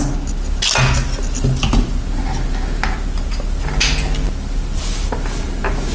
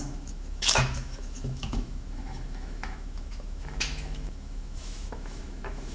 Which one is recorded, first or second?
first